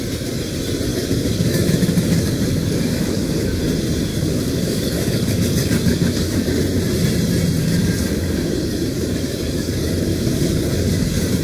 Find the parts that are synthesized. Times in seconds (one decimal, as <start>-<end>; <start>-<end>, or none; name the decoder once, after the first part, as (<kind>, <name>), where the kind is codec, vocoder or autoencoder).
0.9-3.6 (codec, DAC); 4.1-6.6; 7.6-11.4